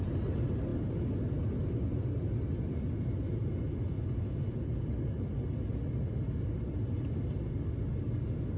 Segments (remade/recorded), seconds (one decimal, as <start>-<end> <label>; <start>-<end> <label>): 0.0-8.6 recorded